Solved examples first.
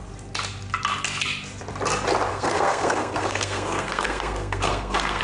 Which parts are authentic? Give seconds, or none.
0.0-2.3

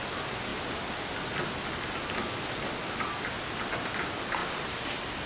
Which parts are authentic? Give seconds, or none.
0.0-5.3